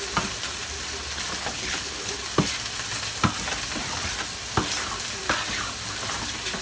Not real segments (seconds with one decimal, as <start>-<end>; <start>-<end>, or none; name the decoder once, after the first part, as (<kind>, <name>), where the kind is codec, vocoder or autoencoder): 1.4-2.1 (codec, HILCodec)